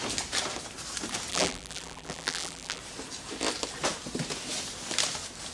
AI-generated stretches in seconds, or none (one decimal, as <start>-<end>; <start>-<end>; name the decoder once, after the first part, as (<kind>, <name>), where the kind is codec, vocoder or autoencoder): 1.3-2.8 (vocoder, BigVGAN v2)